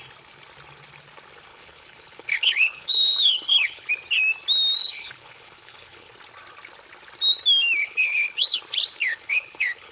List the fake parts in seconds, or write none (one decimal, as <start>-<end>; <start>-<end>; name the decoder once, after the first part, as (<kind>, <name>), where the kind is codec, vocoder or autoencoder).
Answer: 1.5-3.9 (codec, HILCodec); 4.8-6.1; 7.8-8.6; 9.0-9.9